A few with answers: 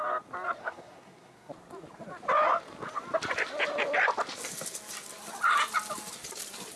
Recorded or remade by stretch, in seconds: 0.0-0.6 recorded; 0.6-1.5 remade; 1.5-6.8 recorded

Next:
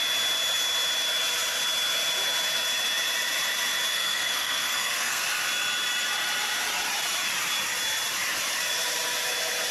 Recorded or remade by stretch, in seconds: 0.0-3.9 recorded; 3.9-5.2 remade; 5.2-9.7 recorded

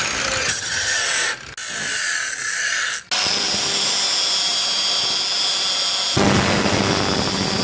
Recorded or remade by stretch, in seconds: 0.0-0.4 recorded; 0.4-1.0 remade; 1.0-7.6 recorded

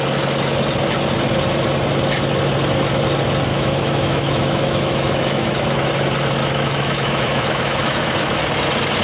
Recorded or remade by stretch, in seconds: 0.0-3.5 recorded; 3.5-5.9 remade; 5.9-6.4 recorded; 6.4-8.4 remade; 8.4-9.0 recorded

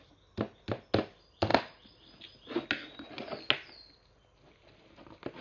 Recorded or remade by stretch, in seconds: 0.0-5.4 recorded